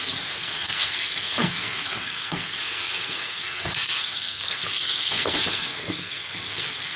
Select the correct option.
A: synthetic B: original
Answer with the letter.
A